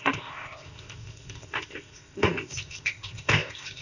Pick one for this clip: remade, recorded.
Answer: remade